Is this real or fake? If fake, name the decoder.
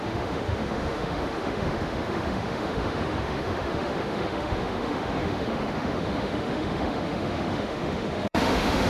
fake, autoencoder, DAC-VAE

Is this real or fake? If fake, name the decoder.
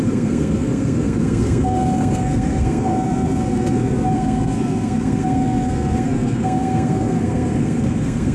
fake, codec, SNAC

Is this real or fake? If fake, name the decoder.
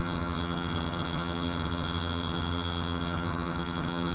fake, vocoder, HiFi-GAN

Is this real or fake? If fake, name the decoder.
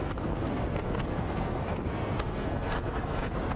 fake, codec, SNAC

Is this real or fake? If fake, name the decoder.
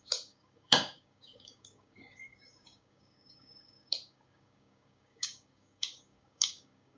fake, codec, DAC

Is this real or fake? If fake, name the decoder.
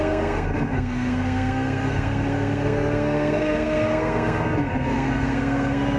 fake, codec, SNAC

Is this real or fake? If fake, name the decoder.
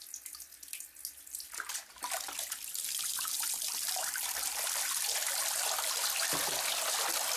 real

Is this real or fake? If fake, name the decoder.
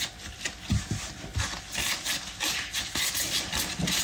real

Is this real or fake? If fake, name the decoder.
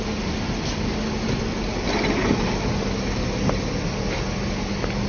real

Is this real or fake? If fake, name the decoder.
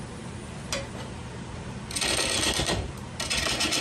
real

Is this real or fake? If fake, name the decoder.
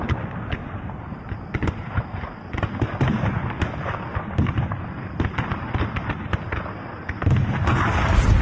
real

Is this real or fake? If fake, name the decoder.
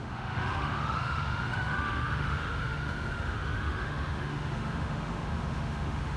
fake, autoencoder, DAC-VAE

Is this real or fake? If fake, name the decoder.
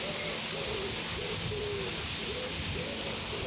real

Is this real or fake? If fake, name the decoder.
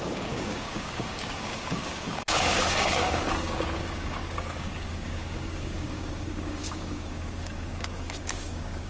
fake, codec, DAC